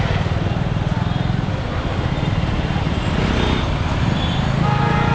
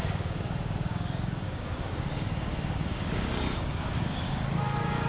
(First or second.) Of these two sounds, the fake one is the second